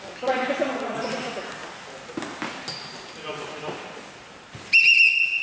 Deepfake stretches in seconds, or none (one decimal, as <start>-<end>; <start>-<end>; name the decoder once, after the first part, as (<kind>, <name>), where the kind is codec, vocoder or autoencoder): none